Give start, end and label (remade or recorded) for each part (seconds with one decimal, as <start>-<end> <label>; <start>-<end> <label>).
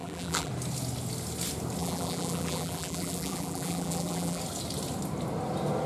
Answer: 0.0-0.5 remade; 0.5-1.8 recorded; 1.8-4.4 remade; 4.4-5.9 recorded